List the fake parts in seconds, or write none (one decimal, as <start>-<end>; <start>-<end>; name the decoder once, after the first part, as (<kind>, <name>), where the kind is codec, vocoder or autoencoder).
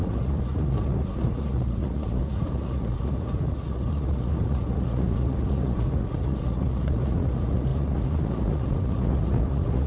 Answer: 0.0-9.9 (vocoder, Vocos)